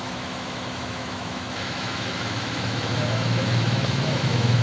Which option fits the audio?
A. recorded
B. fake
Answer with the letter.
B